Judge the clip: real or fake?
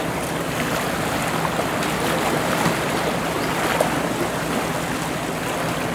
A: real